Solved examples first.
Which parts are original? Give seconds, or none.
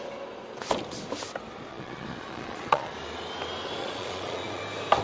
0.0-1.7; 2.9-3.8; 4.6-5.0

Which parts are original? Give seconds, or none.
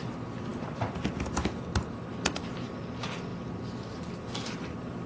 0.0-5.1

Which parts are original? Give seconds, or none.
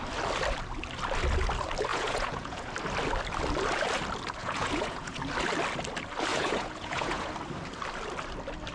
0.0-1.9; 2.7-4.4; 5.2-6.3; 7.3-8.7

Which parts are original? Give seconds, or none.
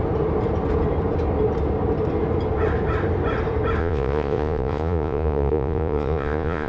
0.0-3.8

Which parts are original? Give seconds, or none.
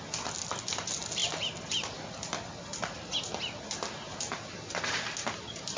0.0-5.8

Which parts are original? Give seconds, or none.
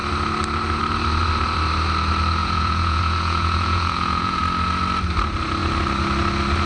0.0-2.4; 4.4-6.7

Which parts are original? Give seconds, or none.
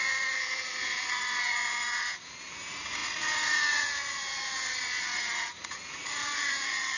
none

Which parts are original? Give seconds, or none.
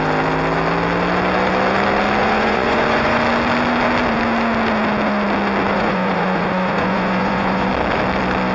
0.0-2.2; 3.2-5.7; 7.7-8.5